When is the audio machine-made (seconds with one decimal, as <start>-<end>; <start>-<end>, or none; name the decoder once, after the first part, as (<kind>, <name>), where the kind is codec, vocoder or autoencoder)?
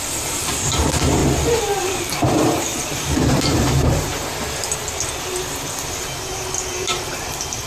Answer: 0.0-1.2 (vocoder, BigVGAN v2); 1.8-4.1; 6.7-7.7